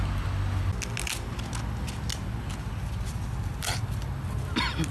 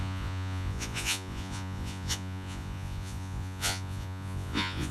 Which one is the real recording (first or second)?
first